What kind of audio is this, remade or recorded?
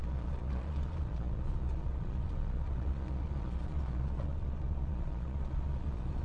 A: remade